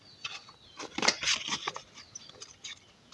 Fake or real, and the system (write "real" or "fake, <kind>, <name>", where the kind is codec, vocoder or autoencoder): real